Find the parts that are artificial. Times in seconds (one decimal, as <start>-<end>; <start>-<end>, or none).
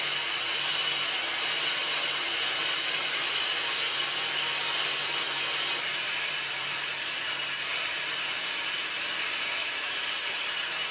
1.8-3.5; 5.9-9.0; 9.6-10.9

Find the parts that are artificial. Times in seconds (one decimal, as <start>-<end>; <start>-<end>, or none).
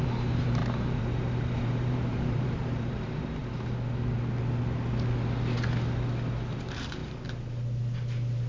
0.0-3.4; 6.5-7.0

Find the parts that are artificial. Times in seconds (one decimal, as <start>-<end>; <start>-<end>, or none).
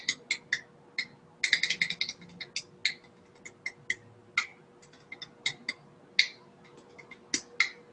none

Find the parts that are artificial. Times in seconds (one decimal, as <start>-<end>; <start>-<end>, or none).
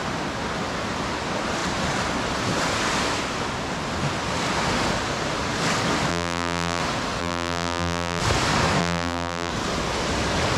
6.1-6.8; 7.2-8.2; 8.8-9.5